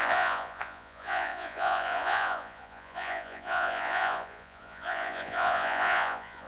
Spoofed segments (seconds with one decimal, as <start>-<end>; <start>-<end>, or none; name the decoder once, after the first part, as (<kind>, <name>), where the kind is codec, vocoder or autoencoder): 0.0-6.5 (vocoder, Vocos)